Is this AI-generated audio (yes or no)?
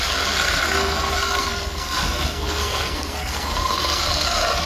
yes